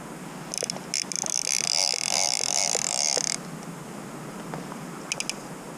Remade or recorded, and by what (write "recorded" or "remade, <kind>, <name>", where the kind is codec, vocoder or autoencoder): recorded